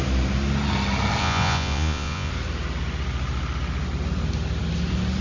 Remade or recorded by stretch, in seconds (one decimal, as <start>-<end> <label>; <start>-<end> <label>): 0.0-1.2 recorded; 1.2-2.3 remade; 2.3-5.2 recorded